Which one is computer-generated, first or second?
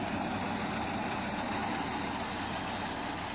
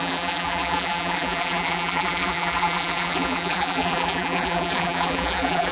second